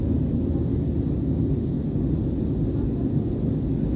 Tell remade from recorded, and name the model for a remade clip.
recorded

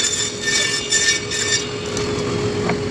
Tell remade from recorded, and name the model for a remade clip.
recorded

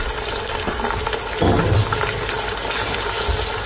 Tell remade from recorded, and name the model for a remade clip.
recorded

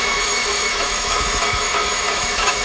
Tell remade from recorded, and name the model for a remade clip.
remade, autoencoder, DAC-VAE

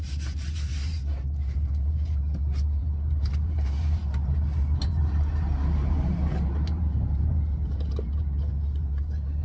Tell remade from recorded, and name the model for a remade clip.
remade, vocoder, BigVGAN v2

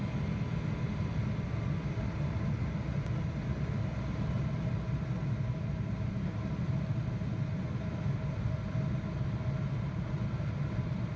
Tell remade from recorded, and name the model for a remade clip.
recorded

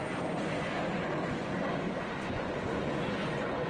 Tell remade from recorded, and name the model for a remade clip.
remade, vocoder, Vocos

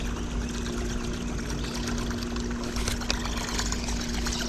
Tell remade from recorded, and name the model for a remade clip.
recorded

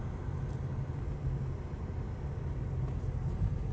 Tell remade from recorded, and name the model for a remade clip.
recorded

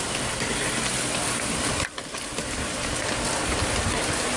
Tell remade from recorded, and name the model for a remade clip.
recorded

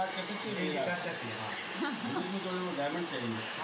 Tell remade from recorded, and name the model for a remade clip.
recorded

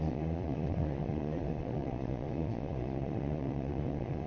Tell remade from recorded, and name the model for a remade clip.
remade, vocoder, Vocos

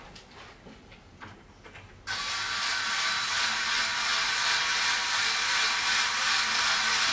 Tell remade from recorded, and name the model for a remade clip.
recorded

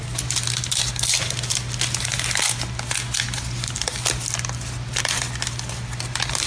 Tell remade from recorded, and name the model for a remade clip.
recorded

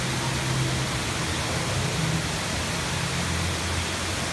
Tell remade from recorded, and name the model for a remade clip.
recorded